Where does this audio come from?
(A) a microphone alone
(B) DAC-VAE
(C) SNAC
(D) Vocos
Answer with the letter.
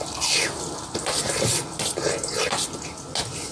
A